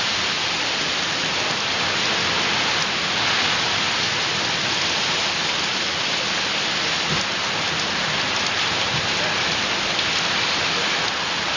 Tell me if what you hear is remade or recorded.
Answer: recorded